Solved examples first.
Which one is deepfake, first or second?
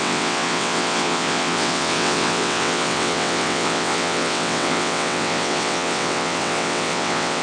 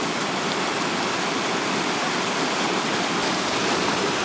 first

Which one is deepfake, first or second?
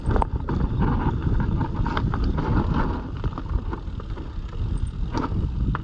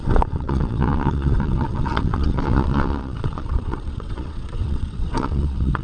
second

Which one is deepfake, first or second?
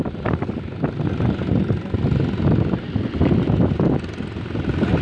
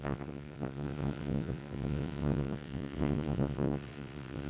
second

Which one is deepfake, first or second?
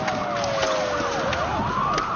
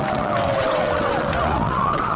second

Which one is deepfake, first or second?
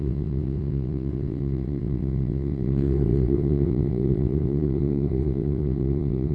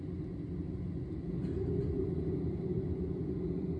first